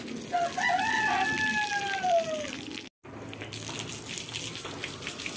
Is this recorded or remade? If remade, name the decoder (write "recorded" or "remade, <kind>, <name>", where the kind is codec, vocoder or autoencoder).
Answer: recorded